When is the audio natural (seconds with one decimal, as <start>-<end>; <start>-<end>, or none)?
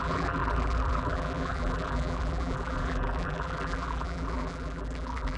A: none